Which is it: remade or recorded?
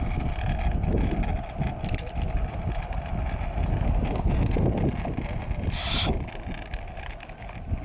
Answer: recorded